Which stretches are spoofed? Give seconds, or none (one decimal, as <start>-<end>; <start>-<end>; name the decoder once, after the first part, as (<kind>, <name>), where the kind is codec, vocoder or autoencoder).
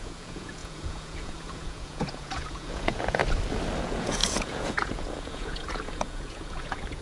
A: 0.0-3.2 (vocoder, Vocos); 3.8-7.0